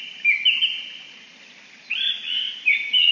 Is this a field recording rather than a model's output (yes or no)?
yes